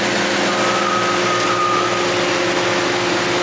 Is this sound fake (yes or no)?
no